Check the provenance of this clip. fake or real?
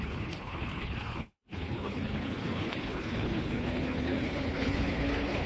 fake